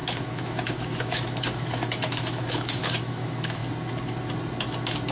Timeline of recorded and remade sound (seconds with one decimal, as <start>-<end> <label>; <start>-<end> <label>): 0.0-3.6 remade; 3.6-5.1 recorded

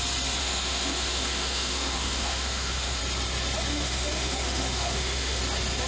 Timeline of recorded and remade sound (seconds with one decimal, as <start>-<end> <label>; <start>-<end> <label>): 0.0-0.4 recorded; 0.4-3.0 remade; 3.0-3.7 recorded; 3.7-5.4 remade; 5.4-5.9 recorded

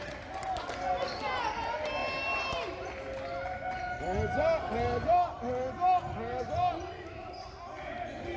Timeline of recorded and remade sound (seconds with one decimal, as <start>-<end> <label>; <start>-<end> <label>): 0.0-8.4 recorded

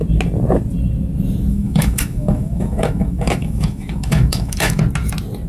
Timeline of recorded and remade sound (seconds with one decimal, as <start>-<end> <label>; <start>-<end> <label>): 0.0-1.5 recorded; 1.5-4.8 remade; 4.8-5.5 recorded